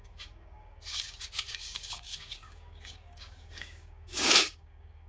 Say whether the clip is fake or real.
fake